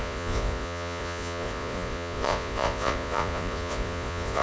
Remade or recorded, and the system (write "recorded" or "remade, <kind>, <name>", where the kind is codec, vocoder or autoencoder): remade, vocoder, Vocos